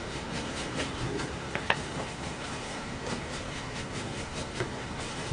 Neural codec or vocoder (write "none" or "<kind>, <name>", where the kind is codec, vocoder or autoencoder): codec, SNAC